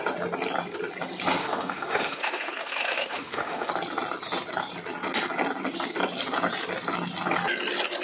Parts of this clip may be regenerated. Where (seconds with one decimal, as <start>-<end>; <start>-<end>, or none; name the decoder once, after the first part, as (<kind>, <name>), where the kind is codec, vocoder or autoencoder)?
1.4-3.7 (autoencoder, DAC-VAE)